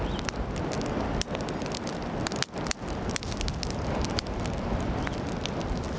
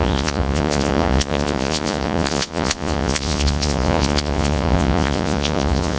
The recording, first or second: first